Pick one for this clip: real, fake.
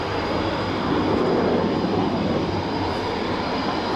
real